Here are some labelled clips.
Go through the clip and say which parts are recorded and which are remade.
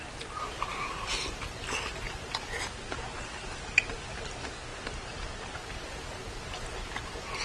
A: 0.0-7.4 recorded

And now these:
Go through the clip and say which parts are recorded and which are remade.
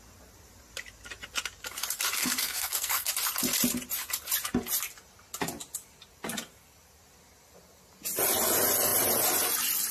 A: 0.0-2.2 recorded; 2.2-3.1 remade; 3.1-9.9 recorded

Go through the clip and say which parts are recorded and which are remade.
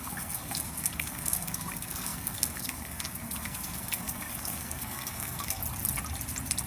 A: 0.0-5.6 remade; 5.6-6.7 recorded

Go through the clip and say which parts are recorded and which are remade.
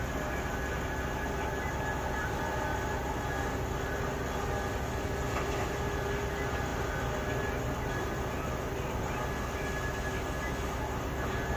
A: 0.0-11.6 recorded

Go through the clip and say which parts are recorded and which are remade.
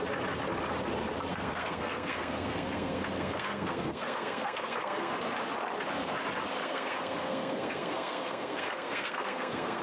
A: 0.0-1.3 recorded; 1.3-5.1 remade; 5.1-6.6 recorded; 6.6-9.8 remade